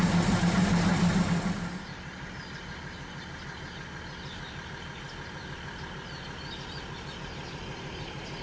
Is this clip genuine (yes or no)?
yes